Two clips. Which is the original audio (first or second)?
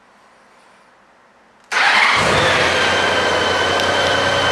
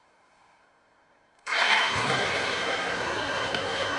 first